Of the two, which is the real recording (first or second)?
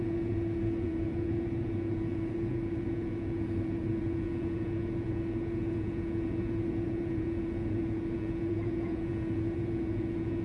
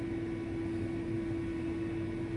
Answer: second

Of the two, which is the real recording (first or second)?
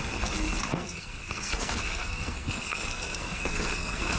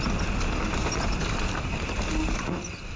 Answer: second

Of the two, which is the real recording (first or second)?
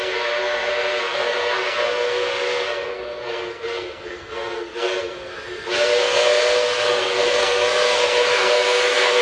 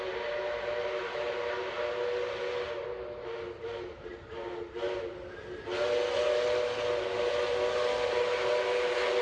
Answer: second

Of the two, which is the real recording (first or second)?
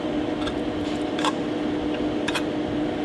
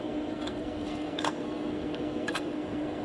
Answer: first